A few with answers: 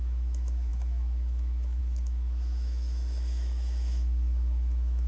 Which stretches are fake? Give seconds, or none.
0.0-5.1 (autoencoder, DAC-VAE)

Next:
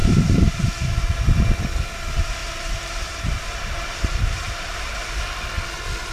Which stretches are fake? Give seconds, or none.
0.0-1.2 (vocoder, BigVGAN v2); 2.4-5.2

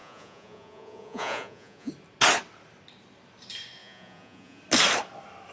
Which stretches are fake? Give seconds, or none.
0.0-1.9 (vocoder, Vocos); 3.8-4.6

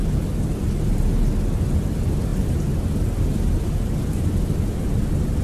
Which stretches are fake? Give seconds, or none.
none

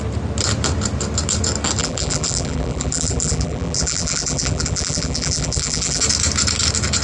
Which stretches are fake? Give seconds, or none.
1.8-6.0 (vocoder, BigVGAN v2)

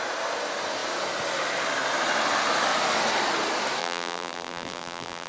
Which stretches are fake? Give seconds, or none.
3.8-5.3 (vocoder, BigVGAN v2)